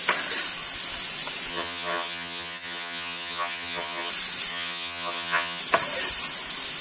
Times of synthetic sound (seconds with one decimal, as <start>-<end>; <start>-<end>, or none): 1.5-4.1; 4.5-5.6